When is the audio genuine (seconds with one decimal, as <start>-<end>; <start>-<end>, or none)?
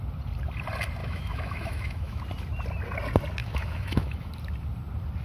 0.0-1.0; 2.2-3.4; 4.3-5.2